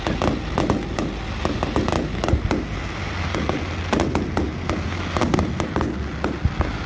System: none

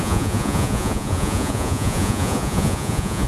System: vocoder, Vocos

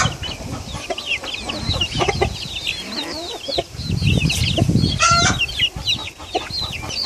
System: none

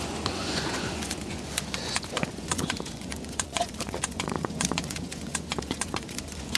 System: vocoder, Vocos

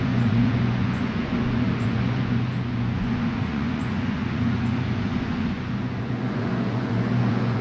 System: vocoder, Vocos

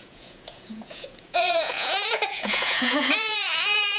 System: vocoder, Vocos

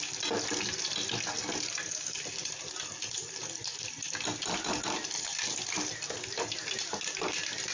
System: none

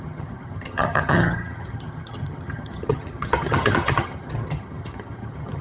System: vocoder, HiFi-GAN